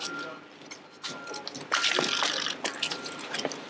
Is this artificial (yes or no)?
no